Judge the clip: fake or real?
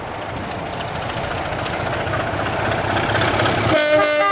real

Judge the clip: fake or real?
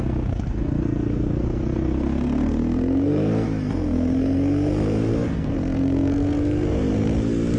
fake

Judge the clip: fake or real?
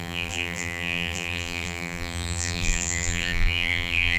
fake